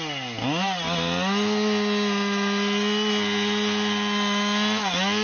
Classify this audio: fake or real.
real